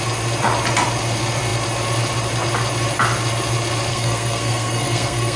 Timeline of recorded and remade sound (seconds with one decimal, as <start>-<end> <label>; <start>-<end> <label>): 0.0-3.9 recorded; 3.9-5.4 remade